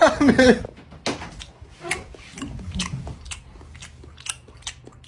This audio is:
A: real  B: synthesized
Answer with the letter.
A